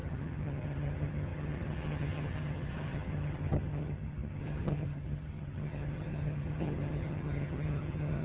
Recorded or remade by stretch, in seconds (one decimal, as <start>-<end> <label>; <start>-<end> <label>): 0.0-8.2 remade